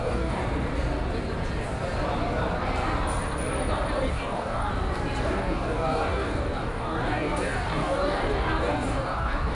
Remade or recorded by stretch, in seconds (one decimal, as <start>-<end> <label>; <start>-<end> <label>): 0.0-0.4 remade; 0.4-4.1 recorded; 4.1-4.7 remade; 4.7-5.2 recorded; 5.2-9.5 remade